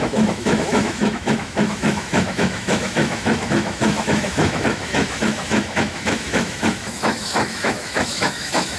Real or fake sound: fake